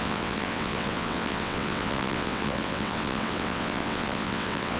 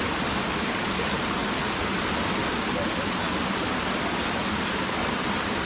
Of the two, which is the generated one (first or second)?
first